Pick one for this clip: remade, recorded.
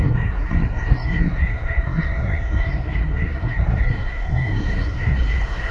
remade